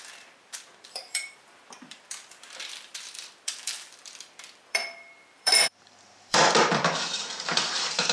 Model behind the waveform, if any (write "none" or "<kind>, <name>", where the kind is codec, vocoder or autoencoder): vocoder, BigVGAN v2